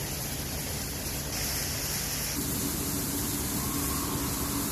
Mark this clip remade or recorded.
recorded